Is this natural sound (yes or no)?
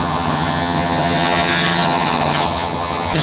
no